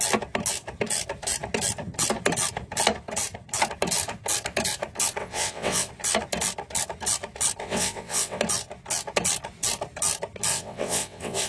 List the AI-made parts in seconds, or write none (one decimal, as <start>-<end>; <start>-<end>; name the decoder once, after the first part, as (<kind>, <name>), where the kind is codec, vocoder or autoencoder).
5.2-5.9 (vocoder, WaveNeXt); 7.6-8.4; 10.5-11.5